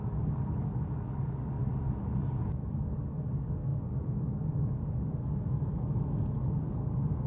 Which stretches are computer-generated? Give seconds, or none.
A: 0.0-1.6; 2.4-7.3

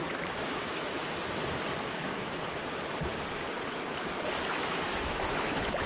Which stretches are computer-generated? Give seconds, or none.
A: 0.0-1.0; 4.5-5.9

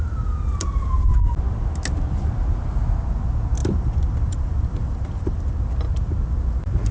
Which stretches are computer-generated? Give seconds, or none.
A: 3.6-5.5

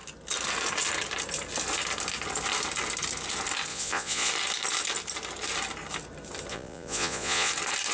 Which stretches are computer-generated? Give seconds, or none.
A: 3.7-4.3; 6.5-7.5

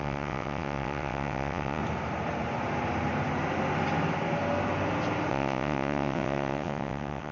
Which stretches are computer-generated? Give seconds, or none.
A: 0.0-1.8; 5.3-7.3

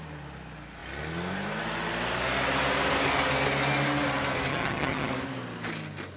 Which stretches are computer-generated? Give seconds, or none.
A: 4.5-5.1